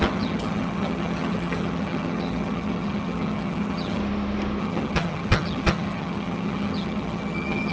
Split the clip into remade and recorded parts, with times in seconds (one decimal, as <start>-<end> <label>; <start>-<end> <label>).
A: 0.0-4.0 remade; 4.0-4.6 recorded; 4.6-7.7 remade